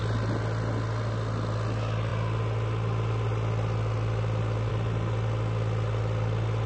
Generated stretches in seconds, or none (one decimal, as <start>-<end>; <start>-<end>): none

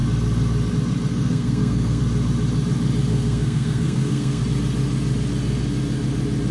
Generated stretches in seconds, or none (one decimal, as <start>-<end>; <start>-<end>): 1.1-2.0; 3.1-4.4

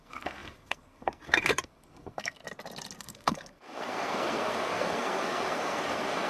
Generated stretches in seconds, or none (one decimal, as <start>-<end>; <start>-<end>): 0.0-2.4; 3.0-6.3

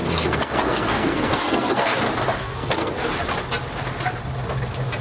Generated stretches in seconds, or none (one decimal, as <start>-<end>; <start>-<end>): 0.0-2.0; 2.4-2.9

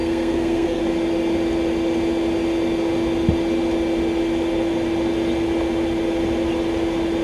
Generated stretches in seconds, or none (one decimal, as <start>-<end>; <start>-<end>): 0.0-0.8

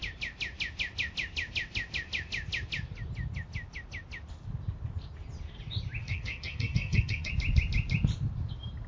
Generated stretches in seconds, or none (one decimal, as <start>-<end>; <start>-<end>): 6.0-7.3